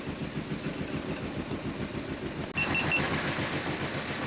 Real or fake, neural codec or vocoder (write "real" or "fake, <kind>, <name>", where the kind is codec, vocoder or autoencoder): real